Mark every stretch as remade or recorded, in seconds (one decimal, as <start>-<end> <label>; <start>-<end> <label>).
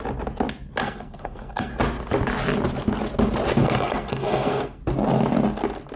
0.0-0.8 recorded; 0.8-1.7 remade; 1.7-3.6 recorded; 3.6-4.8 remade; 4.8-6.0 recorded